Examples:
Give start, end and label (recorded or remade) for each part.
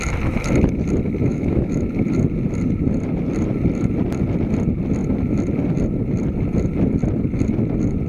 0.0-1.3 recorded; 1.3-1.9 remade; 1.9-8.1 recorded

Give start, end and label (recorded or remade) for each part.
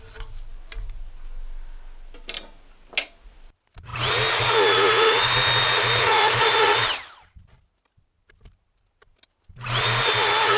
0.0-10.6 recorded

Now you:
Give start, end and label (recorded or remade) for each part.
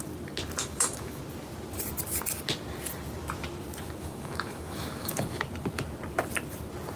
0.0-0.6 recorded; 0.6-1.2 remade; 1.2-4.0 recorded; 4.0-5.4 remade; 5.4-7.0 recorded